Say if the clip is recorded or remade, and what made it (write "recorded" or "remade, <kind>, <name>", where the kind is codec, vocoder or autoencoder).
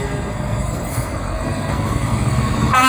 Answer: remade, codec, SNAC